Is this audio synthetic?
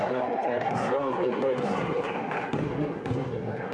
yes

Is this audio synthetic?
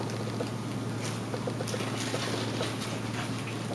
no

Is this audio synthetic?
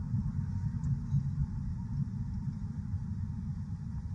no